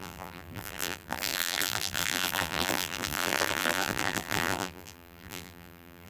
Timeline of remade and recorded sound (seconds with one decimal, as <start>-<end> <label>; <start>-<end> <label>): 0.0-6.1 remade